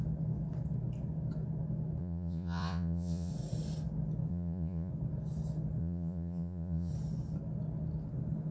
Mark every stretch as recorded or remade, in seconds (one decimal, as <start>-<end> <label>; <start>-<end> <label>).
0.0-2.0 recorded; 2.0-3.3 remade; 3.3-4.3 recorded; 4.3-4.9 remade; 4.9-5.8 recorded; 5.8-6.9 remade; 6.9-8.5 recorded